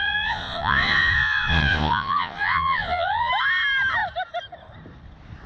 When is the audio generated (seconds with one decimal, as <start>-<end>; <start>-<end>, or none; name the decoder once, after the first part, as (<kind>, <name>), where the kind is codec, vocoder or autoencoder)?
0.0-3.3 (vocoder, Vocos)